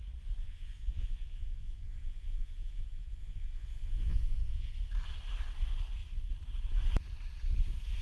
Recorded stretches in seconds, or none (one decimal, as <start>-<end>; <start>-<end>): 0.0-0.4; 4.7-8.0